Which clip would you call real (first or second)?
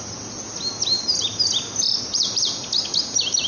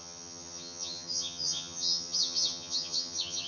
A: first